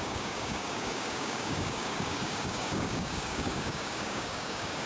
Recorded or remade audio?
remade